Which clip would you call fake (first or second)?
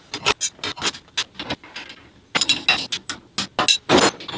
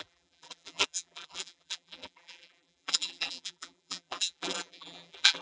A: second